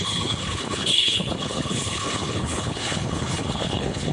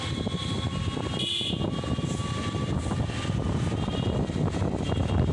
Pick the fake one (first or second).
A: first